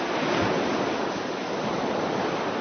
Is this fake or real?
real